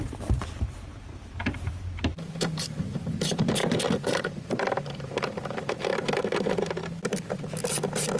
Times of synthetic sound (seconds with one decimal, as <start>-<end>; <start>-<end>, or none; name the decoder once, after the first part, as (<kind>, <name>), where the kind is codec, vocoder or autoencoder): 0.0-5.9 (vocoder, BigVGAN v2)